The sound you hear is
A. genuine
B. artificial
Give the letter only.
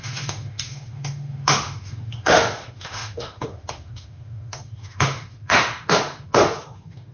B